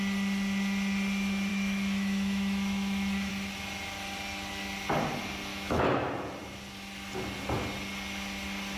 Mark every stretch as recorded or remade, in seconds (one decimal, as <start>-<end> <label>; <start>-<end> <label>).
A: 0.0-1.5 recorded; 1.5-3.3 remade; 3.3-5.5 recorded; 5.5-6.1 remade; 6.1-8.8 recorded